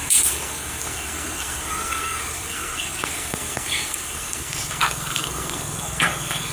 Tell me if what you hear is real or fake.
fake